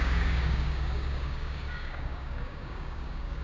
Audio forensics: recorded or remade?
remade